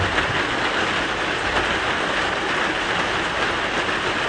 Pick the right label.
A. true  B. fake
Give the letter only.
A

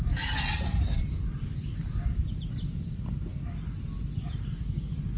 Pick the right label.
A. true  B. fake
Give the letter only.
A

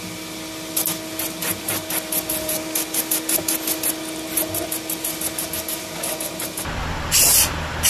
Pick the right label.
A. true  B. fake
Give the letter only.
A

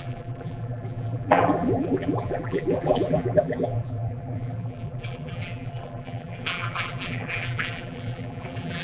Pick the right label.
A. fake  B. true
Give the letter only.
A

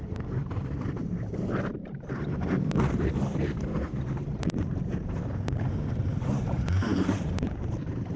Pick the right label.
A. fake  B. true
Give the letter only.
A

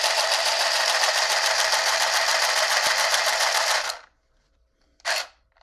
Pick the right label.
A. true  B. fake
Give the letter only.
B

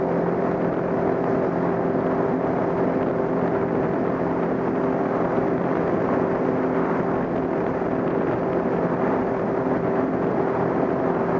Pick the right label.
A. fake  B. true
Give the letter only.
B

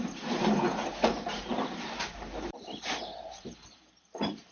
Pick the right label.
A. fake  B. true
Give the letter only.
A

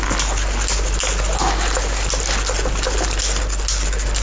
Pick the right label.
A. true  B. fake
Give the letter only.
A